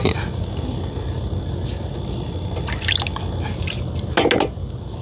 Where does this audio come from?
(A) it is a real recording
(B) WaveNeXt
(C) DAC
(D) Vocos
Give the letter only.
A